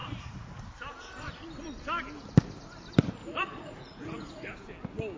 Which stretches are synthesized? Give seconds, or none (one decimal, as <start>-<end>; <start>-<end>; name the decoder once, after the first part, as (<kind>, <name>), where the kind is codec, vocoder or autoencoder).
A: 0.0-0.6 (vocoder, Vocos); 3.2-4.5